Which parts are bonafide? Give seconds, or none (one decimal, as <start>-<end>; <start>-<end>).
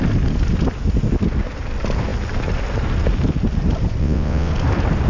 0.0-4.0; 4.5-5.1